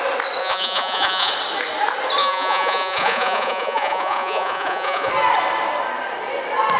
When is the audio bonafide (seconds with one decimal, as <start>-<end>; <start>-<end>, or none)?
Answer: 0.0-0.4; 1.3-2.2; 5.1-6.8